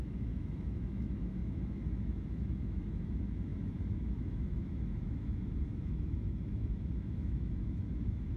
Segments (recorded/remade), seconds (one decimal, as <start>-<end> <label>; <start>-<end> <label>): 0.0-8.4 remade